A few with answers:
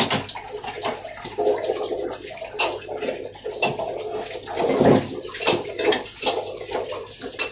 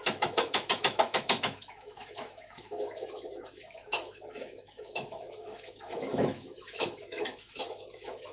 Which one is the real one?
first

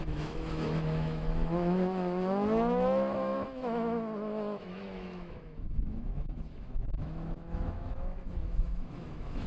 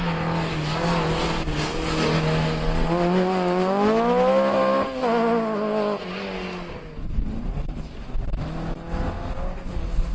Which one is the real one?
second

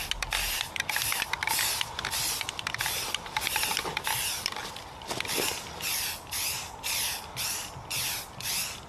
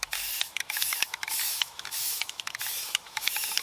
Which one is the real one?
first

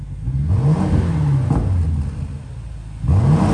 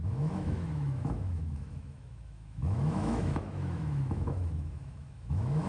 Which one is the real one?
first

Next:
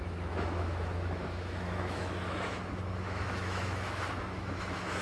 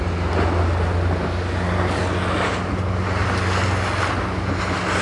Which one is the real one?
second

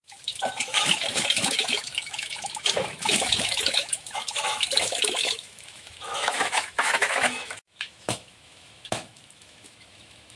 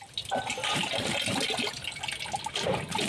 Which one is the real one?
second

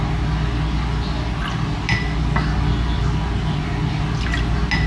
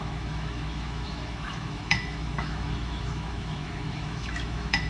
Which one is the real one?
first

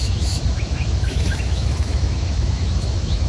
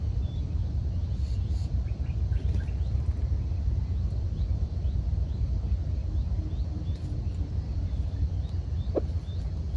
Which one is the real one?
second